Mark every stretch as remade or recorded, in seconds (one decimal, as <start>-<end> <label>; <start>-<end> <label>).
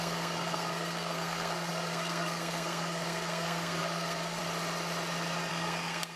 0.0-4.4 remade; 4.4-5.5 recorded; 5.5-6.2 remade